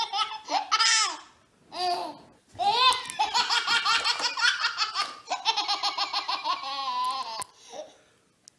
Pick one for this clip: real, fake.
real